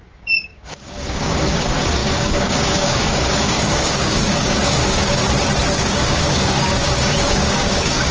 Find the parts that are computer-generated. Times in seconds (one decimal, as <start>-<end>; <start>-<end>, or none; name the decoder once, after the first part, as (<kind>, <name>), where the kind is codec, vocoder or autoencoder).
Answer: 0.0-5.2 (codec, DAC); 5.7-8.1